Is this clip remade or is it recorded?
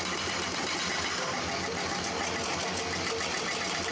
recorded